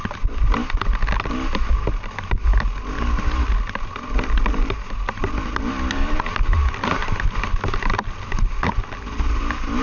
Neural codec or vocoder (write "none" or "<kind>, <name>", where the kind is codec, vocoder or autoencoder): none